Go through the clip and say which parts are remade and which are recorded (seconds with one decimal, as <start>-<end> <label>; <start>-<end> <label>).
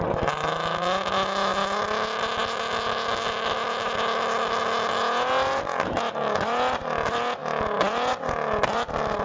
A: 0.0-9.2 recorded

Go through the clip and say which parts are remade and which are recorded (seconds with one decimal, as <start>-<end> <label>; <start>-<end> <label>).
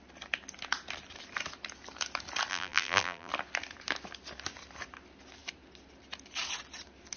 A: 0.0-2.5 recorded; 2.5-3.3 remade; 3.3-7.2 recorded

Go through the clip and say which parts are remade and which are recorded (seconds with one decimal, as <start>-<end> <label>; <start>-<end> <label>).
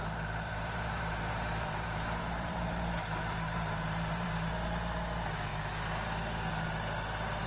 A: 0.0-4.5 remade; 4.5-7.5 recorded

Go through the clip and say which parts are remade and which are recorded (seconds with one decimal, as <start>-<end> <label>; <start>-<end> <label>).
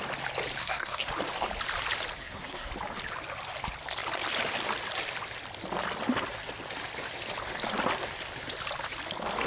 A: 0.0-0.6 recorded; 0.6-1.1 remade; 1.1-2.2 recorded; 2.2-2.7 remade; 2.7-9.5 recorded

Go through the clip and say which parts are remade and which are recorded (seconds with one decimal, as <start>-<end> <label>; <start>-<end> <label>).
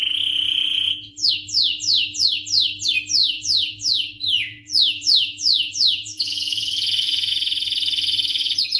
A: 0.0-0.7 recorded; 0.7-1.3 remade; 1.3-3.2 recorded; 3.2-7.3 remade; 7.3-8.8 recorded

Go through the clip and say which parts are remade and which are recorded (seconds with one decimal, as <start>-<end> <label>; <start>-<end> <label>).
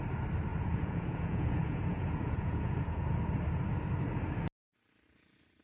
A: 0.0-0.5 recorded; 0.5-3.0 remade; 3.0-5.6 recorded